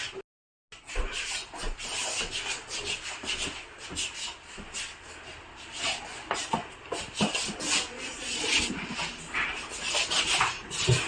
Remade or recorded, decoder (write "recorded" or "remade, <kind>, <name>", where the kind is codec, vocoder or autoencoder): recorded